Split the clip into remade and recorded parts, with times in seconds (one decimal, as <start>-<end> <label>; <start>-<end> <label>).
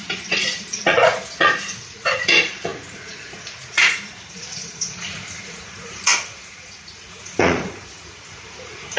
0.0-9.0 remade